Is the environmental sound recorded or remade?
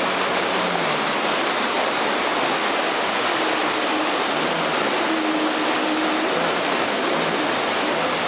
recorded